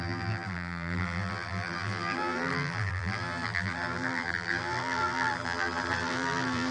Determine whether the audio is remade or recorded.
remade